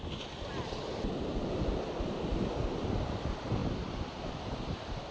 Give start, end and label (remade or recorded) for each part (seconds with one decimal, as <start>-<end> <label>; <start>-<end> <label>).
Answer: 0.0-5.1 recorded